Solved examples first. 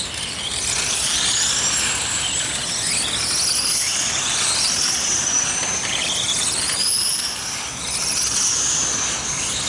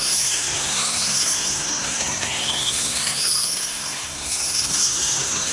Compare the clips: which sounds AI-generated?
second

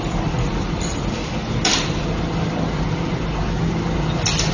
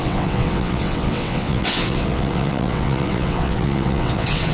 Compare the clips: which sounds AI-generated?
second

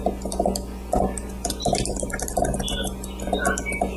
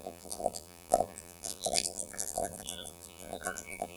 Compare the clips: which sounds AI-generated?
second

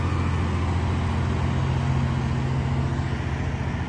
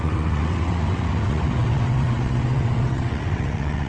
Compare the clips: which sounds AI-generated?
second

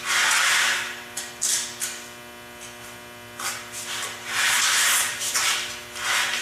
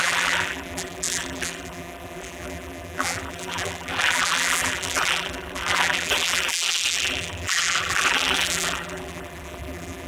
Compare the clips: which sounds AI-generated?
second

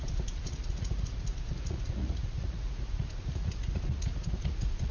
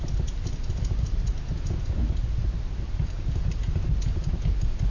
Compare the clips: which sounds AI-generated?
first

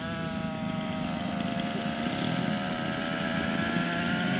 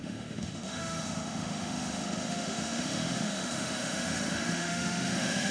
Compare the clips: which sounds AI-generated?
second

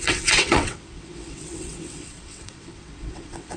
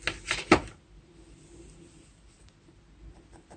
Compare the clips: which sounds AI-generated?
first